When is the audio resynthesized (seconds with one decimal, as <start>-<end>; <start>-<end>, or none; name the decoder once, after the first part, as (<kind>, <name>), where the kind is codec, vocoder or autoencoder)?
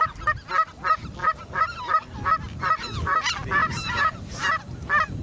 1.2-1.8 (vocoder, BigVGAN v2); 3.6-4.5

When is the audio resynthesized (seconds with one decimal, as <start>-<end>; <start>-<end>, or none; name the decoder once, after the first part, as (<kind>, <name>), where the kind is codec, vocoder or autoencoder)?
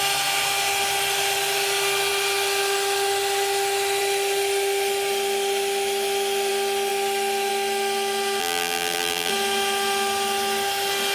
8.4-9.3 (vocoder, BigVGAN v2)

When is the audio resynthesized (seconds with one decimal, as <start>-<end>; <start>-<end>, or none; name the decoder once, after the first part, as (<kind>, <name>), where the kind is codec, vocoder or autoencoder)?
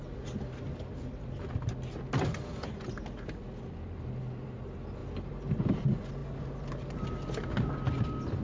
5.0-5.8 (vocoder, BigVGAN v2)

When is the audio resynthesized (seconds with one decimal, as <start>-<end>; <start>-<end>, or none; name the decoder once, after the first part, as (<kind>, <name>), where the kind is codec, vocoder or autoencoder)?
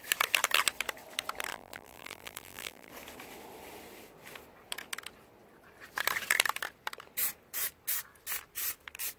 1.5-2.9 (vocoder, BigVGAN v2)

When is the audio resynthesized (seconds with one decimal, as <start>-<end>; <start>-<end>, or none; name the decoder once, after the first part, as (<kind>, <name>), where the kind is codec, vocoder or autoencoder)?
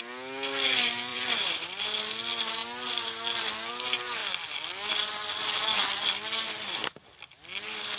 1.1-1.8 (vocoder, BigVGAN v2); 6.8-8.0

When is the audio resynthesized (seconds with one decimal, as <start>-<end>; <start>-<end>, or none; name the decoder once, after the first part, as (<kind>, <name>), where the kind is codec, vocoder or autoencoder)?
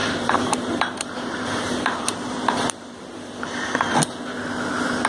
0.0-3.1 (vocoder, BigVGAN v2)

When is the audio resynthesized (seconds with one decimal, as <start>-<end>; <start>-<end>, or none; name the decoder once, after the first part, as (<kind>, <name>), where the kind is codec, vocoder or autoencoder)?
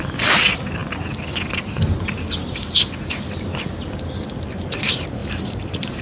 5.2-6.0 (vocoder, BigVGAN v2)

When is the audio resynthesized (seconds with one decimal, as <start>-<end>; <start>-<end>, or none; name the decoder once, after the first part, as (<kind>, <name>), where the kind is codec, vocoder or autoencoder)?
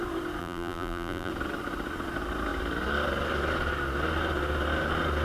0.4-1.3 (vocoder, BigVGAN v2)